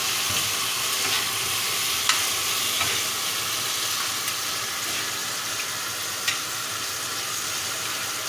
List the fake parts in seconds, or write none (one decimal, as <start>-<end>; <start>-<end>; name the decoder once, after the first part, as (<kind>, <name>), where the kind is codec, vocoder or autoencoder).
5.2-5.8 (vocoder, BigVGAN v2)